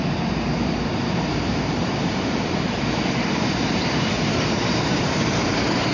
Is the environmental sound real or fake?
fake